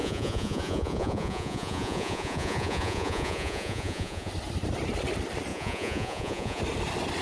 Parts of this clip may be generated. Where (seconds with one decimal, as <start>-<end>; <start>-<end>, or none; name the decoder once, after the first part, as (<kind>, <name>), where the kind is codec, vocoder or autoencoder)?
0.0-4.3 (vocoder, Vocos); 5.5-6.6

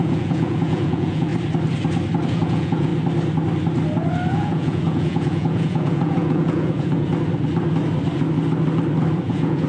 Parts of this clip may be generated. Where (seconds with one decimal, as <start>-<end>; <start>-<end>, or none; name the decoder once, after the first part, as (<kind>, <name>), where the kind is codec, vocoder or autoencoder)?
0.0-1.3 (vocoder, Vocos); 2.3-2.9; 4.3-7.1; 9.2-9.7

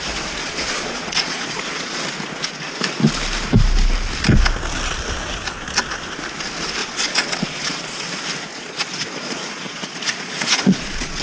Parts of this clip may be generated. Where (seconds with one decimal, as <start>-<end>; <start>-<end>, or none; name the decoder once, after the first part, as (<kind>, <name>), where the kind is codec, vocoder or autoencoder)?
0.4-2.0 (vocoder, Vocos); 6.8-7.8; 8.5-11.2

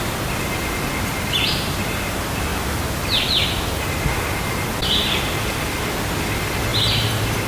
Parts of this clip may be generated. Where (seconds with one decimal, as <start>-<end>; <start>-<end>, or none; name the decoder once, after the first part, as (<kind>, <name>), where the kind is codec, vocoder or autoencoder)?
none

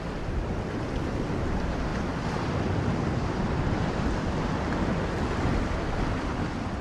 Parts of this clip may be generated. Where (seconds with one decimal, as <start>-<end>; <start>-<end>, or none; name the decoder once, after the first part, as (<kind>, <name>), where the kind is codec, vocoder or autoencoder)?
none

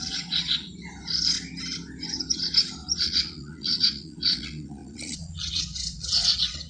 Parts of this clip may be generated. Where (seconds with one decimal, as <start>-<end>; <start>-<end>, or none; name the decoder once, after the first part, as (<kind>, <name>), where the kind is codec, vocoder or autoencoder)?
0.0-0.7 (vocoder, Vocos); 3.0-6.7

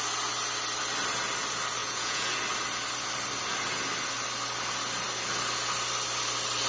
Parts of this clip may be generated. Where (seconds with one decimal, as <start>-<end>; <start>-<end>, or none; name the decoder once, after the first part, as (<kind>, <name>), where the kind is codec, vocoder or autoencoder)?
1.8-2.3 (vocoder, Vocos)

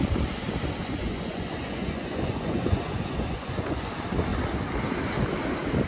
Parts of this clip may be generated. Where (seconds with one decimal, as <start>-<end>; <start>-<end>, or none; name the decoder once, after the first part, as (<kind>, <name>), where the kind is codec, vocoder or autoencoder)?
0.8-3.9 (vocoder, Vocos)